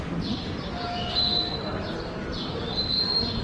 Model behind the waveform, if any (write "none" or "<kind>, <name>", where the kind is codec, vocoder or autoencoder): none